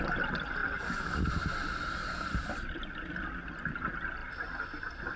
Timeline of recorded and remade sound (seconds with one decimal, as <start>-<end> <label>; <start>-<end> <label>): 0.0-5.2 recorded